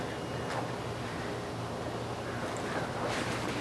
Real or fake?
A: real